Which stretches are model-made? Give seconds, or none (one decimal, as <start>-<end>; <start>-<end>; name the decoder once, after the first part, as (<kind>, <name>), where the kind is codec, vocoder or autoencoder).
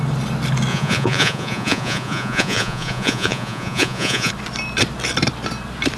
0.7-4.3 (vocoder, Vocos)